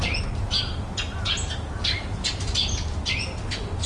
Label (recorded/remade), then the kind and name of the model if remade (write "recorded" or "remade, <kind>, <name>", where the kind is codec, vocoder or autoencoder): recorded